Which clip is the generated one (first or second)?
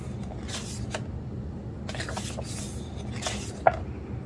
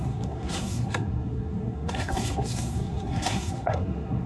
second